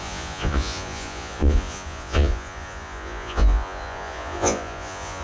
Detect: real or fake fake